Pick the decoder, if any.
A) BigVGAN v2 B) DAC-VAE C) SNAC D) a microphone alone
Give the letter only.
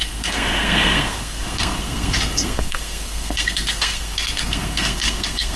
C